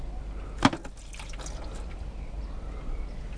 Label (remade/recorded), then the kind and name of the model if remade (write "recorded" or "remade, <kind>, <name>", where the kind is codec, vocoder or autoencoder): recorded